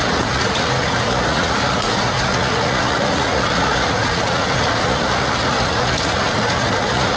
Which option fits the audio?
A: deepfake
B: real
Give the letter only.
A